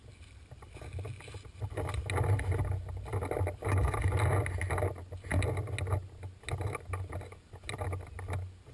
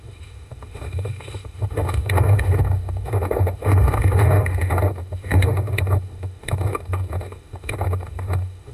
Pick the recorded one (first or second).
first